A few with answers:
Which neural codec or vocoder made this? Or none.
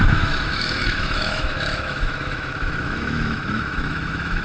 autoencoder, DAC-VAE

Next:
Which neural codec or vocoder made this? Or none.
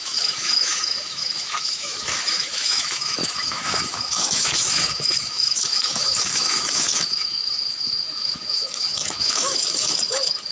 autoencoder, DAC-VAE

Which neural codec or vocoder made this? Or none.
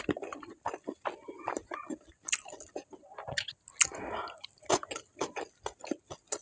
none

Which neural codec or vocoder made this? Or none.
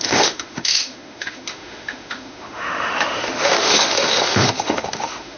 autoencoder, DAC-VAE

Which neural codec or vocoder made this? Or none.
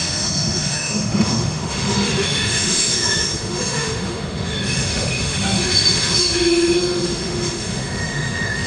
autoencoder, DAC-VAE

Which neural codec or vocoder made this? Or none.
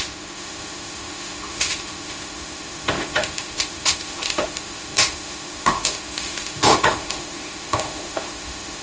autoencoder, DAC-VAE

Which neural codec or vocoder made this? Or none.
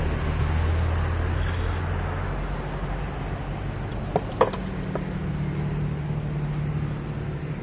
none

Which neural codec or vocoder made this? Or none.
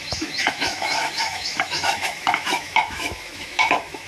autoencoder, DAC-VAE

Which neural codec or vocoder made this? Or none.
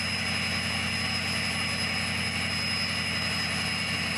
none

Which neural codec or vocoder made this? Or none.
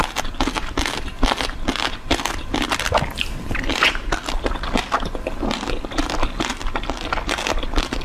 none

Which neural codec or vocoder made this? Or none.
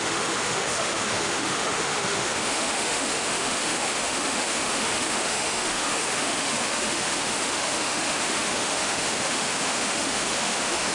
autoencoder, DAC-VAE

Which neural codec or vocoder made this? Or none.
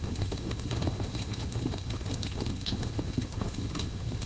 autoencoder, DAC-VAE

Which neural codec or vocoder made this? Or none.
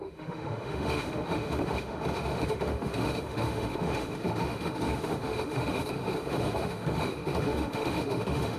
autoencoder, DAC-VAE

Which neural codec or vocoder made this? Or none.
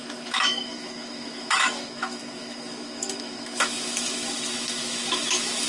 autoencoder, DAC-VAE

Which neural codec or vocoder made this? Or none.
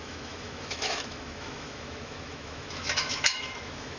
autoencoder, DAC-VAE